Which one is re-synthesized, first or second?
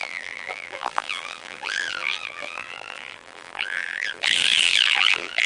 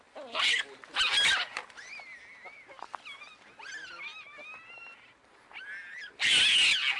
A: first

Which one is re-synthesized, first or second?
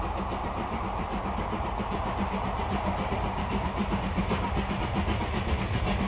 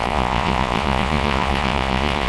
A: second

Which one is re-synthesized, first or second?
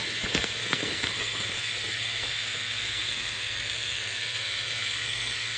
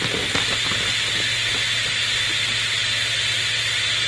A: first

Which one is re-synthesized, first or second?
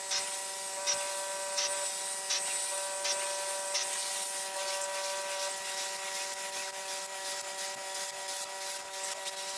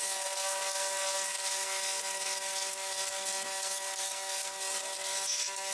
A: second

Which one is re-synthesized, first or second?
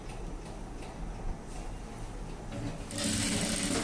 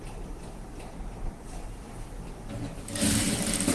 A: second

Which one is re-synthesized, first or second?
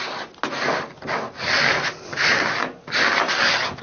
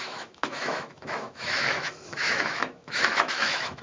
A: second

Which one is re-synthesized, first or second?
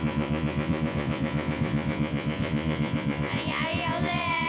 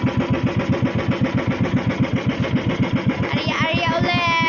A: first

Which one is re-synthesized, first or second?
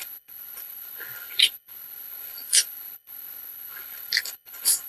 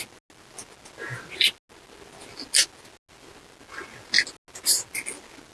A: first